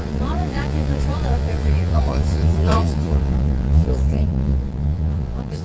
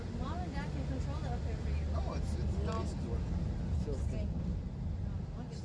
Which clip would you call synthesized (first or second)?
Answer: first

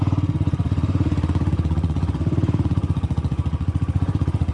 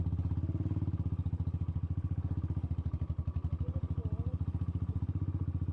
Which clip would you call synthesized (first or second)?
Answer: first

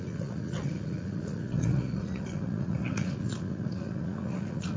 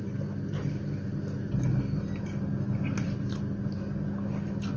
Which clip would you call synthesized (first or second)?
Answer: first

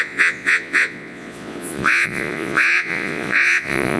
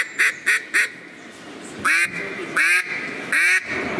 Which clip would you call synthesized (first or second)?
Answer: first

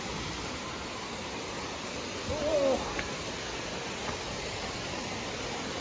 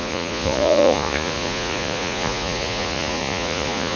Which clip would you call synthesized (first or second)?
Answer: second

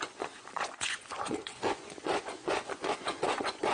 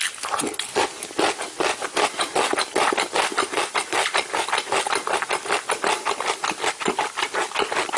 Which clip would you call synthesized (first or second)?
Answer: first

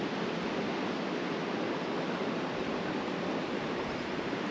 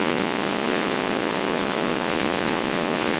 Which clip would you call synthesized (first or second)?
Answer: second